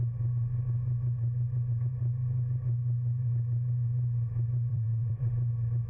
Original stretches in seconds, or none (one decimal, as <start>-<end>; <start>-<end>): 0.0-4.7; 5.3-5.9